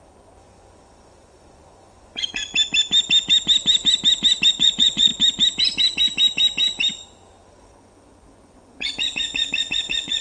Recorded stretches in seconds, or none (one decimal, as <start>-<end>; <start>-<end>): 2.5-4.5; 5.1-7.6